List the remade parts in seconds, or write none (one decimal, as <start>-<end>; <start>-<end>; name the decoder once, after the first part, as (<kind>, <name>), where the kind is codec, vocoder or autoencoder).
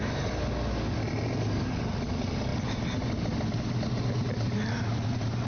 none